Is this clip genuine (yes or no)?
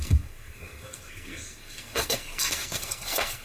no